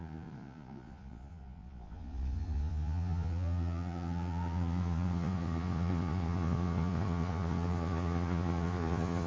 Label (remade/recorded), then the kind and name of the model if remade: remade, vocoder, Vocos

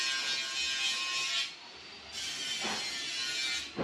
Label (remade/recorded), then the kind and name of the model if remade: recorded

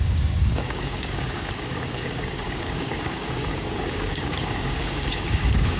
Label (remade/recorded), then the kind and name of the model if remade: remade, codec, DAC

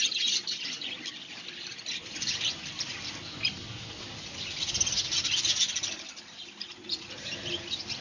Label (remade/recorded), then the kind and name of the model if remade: recorded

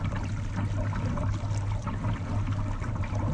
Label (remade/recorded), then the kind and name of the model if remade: recorded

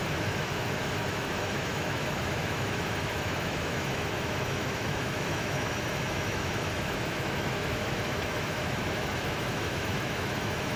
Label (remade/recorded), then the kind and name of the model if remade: remade, autoencoder, DAC-VAE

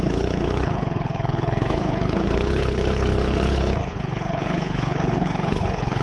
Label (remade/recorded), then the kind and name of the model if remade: remade, codec, HILCodec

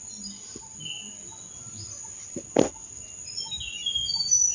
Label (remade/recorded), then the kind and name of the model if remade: recorded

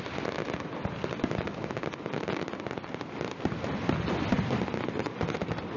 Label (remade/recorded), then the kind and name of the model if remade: recorded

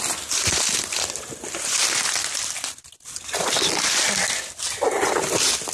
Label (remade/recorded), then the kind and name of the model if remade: recorded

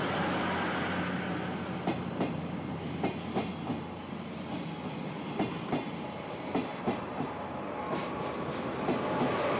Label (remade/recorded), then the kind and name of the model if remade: recorded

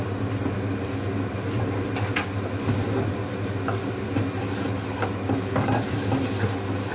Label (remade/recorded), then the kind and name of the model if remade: recorded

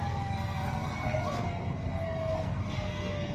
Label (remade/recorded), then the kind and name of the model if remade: remade, codec, SNAC